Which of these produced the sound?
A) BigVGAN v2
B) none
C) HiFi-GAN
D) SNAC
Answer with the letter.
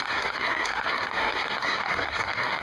D